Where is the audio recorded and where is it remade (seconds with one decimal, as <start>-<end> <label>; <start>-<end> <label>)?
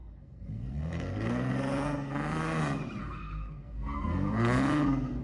0.0-2.6 remade; 2.6-3.0 recorded; 3.0-5.2 remade